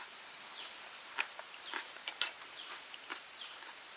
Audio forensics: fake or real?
fake